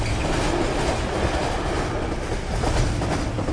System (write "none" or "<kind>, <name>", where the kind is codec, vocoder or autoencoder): none